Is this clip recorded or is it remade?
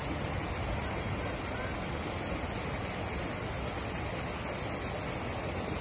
recorded